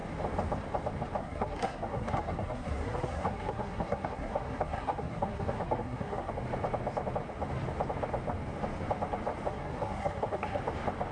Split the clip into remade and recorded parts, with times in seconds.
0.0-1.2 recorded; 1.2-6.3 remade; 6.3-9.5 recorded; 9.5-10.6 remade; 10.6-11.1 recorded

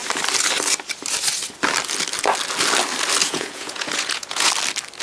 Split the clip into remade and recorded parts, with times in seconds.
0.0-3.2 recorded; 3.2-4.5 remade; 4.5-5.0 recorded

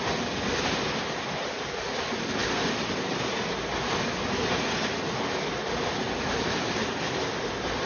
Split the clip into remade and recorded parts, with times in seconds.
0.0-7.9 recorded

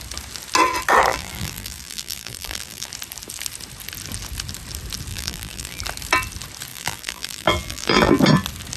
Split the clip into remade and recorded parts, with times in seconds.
0.0-1.1 recorded; 1.1-2.9 remade; 2.9-5.1 recorded; 5.1-5.8 remade; 5.8-6.7 recorded; 6.7-8.2 remade; 8.2-8.8 recorded

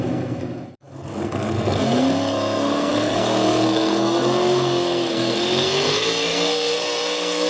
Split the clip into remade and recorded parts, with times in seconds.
0.0-7.5 remade

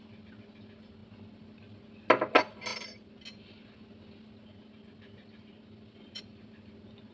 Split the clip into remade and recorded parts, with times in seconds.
0.0-7.1 recorded